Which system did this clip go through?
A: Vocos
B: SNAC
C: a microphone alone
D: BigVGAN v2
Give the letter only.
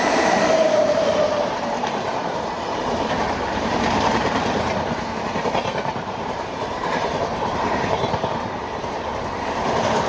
D